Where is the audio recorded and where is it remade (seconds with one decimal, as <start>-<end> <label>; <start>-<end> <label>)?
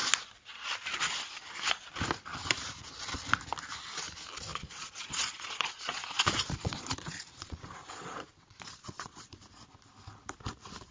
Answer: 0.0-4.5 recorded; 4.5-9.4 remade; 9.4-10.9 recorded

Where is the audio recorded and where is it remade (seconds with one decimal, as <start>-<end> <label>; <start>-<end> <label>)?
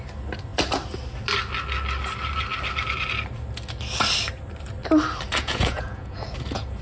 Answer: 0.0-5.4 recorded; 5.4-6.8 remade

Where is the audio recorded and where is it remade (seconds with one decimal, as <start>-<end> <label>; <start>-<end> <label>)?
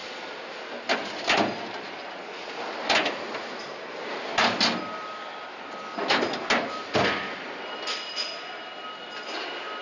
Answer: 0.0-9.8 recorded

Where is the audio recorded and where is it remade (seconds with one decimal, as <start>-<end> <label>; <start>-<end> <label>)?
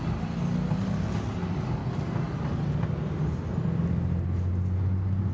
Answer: 0.0-5.3 recorded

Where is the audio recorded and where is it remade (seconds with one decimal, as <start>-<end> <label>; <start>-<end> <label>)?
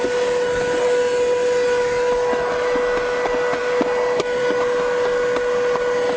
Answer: 0.0-6.2 recorded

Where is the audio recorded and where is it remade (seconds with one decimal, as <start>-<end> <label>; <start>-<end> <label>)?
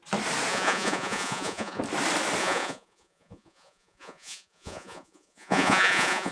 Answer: 0.0-0.5 recorded; 0.5-1.8 remade; 1.8-2.4 recorded; 2.4-6.3 remade